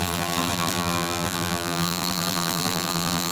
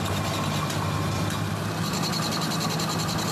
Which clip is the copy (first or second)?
first